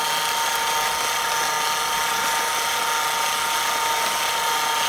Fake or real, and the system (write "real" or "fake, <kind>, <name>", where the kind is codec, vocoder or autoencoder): real